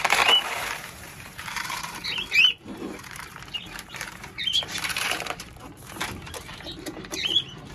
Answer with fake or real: fake